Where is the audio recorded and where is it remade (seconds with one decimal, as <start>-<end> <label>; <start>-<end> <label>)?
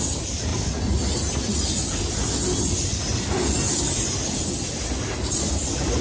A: 0.0-6.0 recorded